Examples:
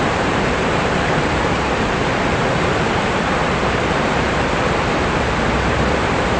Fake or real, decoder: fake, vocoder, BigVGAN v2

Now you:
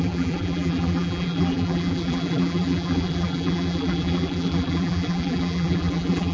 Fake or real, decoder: fake, vocoder, BigVGAN v2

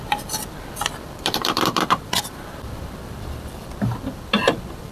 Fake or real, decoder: fake, vocoder, BigVGAN v2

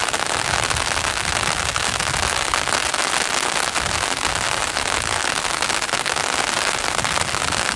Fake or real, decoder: real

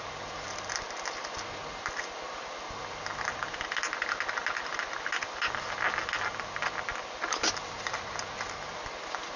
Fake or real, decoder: real